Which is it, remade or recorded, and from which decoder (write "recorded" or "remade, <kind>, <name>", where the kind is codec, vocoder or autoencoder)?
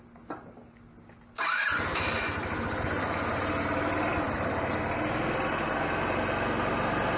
recorded